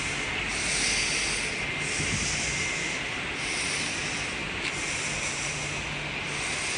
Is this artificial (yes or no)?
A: no